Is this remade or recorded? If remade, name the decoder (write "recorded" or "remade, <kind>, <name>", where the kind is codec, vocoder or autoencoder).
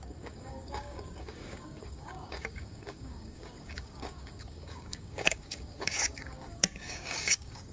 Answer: remade, codec, DAC